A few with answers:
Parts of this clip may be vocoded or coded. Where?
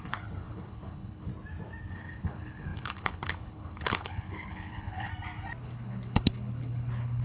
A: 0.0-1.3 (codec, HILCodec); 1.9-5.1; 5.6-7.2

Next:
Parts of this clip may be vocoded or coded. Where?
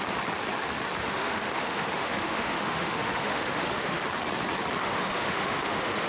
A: 1.0-4.1 (autoencoder, DAC-VAE); 4.8-6.1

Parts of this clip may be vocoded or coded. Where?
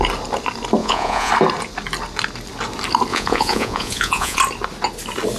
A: 0.8-1.3 (vocoder, Vocos); 3.1-4.4